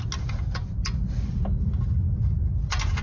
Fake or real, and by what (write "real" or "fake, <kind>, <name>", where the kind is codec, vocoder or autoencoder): real